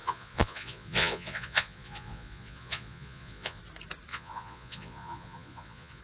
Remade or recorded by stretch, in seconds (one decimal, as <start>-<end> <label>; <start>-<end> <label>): 0.0-3.6 remade; 3.6-4.1 recorded; 4.1-6.0 remade